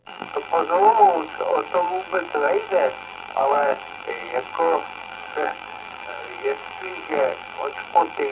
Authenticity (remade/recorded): remade